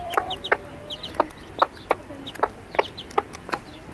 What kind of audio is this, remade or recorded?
recorded